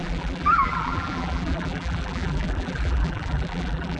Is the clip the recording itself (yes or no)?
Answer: no